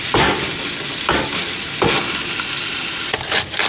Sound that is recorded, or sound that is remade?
recorded